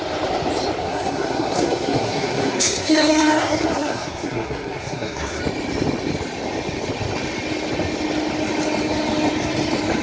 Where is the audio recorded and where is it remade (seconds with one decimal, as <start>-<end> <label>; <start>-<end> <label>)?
0.0-0.8 recorded; 0.8-5.4 remade; 5.4-10.0 recorded